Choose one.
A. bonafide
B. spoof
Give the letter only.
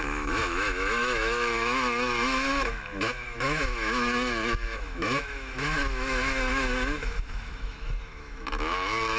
B